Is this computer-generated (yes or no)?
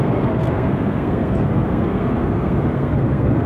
yes